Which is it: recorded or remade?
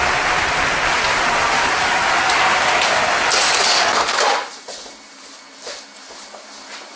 recorded